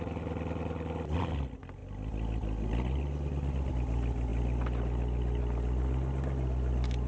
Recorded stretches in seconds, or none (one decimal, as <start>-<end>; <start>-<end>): 0.0-7.1